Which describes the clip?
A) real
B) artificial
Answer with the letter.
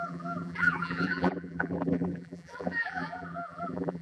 B